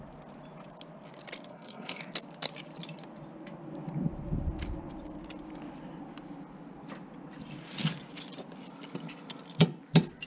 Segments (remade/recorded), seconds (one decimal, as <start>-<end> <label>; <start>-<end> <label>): 0.0-1.5 recorded; 1.5-2.0 remade; 2.0-10.3 recorded